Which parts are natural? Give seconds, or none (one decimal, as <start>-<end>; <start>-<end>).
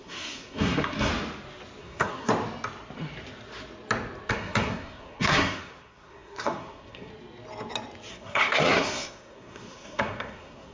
1.1-1.8; 2.3-4.3; 7.1-8.1